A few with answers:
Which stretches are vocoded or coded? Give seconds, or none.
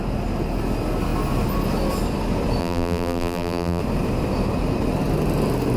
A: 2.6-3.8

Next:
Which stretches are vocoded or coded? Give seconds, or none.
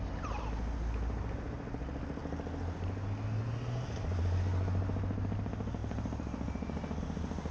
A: 5.8-7.0